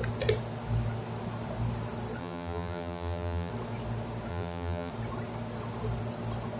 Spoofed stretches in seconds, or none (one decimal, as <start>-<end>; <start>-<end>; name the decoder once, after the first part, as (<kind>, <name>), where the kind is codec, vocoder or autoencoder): 2.2-3.5 (vocoder, BigVGAN v2); 4.3-4.9